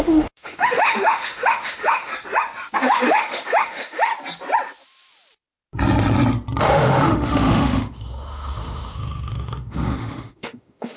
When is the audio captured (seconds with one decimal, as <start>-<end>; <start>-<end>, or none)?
2.1-2.8; 4.1-6.6